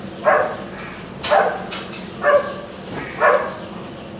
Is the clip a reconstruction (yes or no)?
no